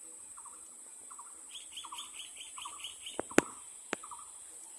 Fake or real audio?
real